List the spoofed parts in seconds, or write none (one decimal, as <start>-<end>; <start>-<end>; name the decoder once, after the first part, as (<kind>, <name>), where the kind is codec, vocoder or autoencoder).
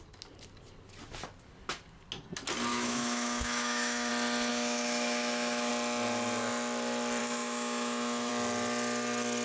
2.7-4.1 (autoencoder, DAC-VAE); 4.5-5.7; 7.2-8.3